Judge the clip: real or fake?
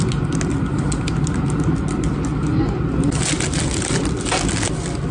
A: real